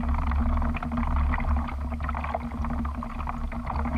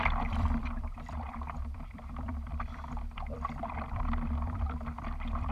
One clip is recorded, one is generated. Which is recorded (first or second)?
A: first